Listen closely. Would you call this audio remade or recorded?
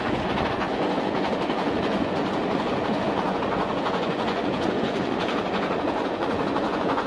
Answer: remade